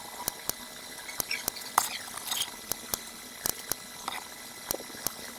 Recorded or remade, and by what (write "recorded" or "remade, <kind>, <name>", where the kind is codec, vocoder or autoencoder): recorded